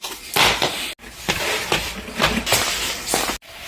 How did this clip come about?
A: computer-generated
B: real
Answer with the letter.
B